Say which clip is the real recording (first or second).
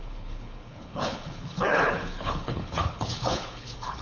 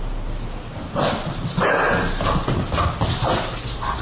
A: second